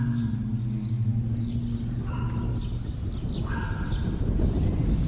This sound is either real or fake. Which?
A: real